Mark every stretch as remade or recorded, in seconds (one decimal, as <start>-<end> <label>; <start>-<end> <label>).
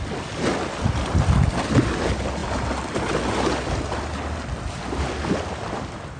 0.0-6.2 recorded